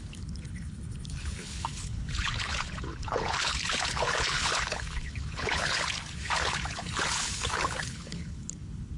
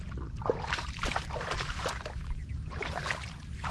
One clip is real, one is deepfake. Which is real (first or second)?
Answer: second